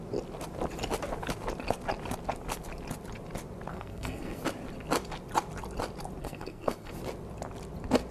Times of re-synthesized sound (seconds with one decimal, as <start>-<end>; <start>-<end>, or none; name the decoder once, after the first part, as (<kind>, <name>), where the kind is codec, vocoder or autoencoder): 3.7-4.4 (codec, SNAC); 6.2-6.9